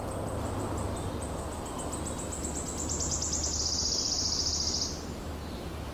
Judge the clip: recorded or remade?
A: recorded